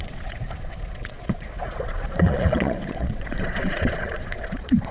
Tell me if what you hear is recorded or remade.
remade